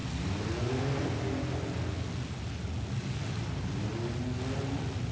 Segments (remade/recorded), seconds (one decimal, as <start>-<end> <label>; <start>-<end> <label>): 0.0-5.1 recorded